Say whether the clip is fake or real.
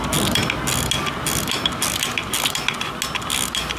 real